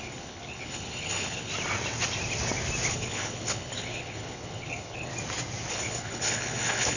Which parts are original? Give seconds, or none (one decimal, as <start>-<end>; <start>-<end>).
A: 1.5-2.9; 5.1-5.7